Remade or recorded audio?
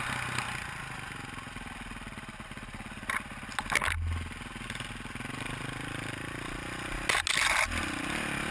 recorded